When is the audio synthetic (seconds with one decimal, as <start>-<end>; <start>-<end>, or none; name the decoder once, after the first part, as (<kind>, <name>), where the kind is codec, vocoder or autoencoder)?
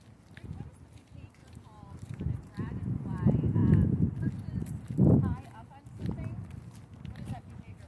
none